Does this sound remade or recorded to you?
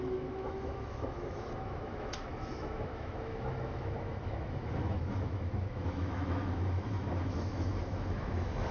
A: remade